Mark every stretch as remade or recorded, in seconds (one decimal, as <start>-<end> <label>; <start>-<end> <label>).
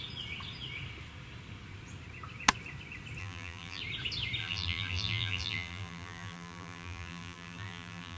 0.0-3.2 recorded; 3.2-3.8 remade; 3.8-4.4 recorded; 4.4-8.2 remade